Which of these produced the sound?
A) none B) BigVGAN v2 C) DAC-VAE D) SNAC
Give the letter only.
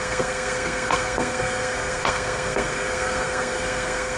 D